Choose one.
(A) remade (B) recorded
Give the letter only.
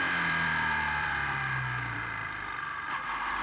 A